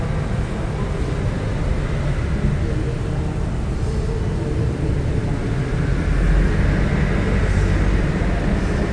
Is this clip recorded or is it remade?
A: recorded